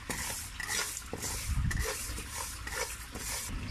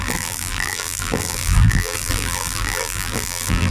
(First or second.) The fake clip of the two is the second